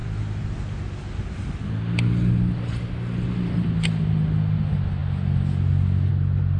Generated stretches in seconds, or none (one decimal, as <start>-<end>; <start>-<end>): none